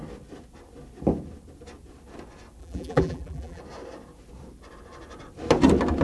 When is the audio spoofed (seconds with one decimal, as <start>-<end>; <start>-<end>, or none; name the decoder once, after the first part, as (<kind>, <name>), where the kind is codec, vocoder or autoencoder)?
2.6-3.6 (vocoder, BigVGAN v2)